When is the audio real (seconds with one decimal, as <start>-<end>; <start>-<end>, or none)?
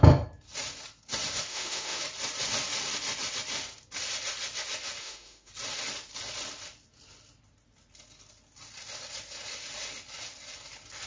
0.0-1.5; 2.0-5.0; 5.5-11.1